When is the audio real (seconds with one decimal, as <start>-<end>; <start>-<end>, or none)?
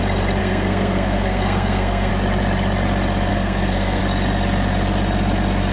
0.0-0.4; 2.1-3.3; 4.0-5.7